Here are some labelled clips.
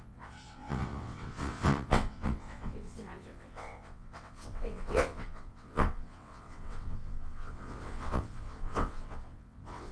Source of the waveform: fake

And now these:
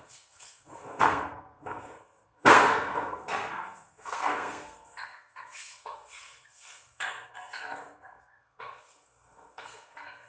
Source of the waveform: fake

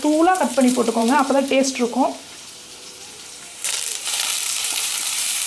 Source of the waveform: fake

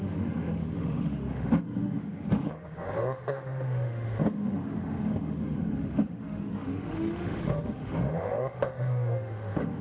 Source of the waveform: fake